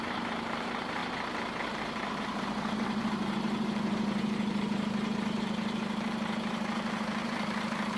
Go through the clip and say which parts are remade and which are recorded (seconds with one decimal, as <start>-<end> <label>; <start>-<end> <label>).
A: 0.0-1.0 remade; 1.0-1.6 recorded; 1.6-8.0 remade